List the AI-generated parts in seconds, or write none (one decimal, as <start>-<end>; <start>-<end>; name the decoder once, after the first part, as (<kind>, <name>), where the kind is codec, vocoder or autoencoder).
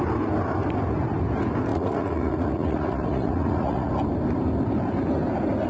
1.7-3.9 (vocoder, Vocos)